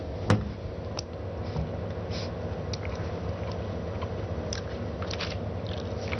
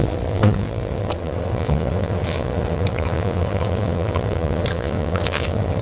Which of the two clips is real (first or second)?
first